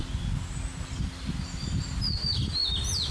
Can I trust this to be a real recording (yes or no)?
yes